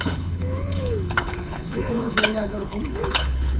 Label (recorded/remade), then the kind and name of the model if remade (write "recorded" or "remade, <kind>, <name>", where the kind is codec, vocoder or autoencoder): remade, codec, HILCodec